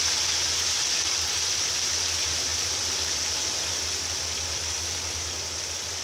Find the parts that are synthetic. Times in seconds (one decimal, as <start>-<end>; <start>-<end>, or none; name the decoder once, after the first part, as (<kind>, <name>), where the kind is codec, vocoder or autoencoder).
none